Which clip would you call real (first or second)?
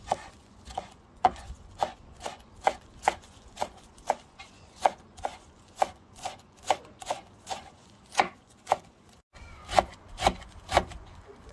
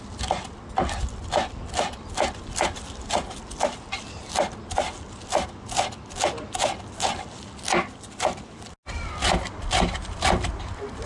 second